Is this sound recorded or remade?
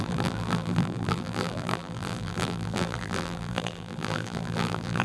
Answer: remade